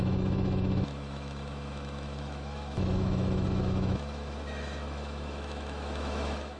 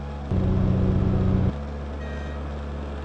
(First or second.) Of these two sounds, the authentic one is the second